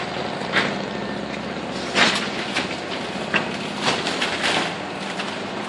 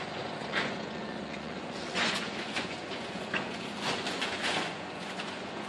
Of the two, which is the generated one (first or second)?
second